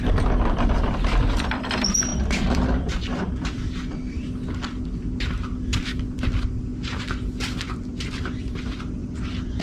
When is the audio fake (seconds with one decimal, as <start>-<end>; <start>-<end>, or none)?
0.0-6.7; 7.3-9.6